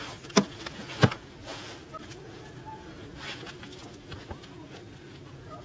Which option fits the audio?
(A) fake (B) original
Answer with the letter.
B